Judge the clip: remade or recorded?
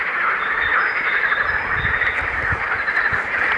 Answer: recorded